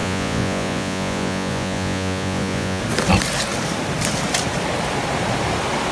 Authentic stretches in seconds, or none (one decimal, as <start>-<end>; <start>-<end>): 2.8-5.9